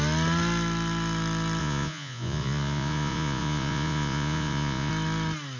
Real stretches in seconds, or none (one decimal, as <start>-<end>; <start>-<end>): 0.0-1.6; 4.9-5.6